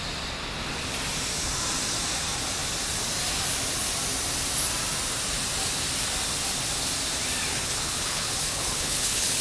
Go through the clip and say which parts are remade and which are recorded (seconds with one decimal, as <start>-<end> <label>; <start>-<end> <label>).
0.0-7.5 recorded; 7.5-9.4 remade